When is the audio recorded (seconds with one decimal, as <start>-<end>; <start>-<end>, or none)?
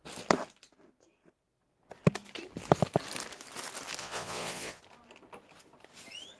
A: 0.0-4.0; 4.8-6.4